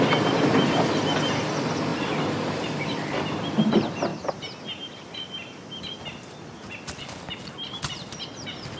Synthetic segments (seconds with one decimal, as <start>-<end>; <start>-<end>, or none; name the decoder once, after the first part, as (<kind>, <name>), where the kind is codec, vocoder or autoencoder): 1.9-3.1 (vocoder, BigVGAN v2)